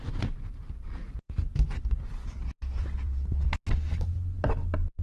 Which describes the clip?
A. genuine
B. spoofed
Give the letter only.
A